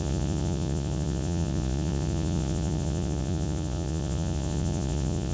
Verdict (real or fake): fake